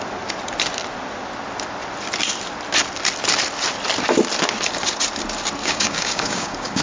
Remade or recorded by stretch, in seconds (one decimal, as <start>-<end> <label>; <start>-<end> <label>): 0.0-5.6 recorded; 5.6-6.8 remade